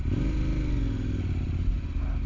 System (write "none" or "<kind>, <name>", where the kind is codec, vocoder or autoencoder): none